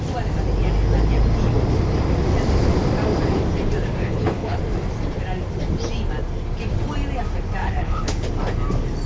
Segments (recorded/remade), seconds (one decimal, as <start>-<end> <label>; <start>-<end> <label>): 0.0-4.0 recorded; 4.0-4.6 remade; 4.6-7.6 recorded; 7.6-8.3 remade; 8.3-9.1 recorded